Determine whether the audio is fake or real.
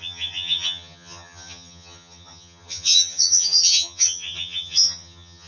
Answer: fake